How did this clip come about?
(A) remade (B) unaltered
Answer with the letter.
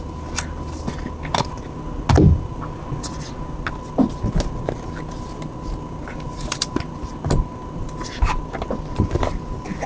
B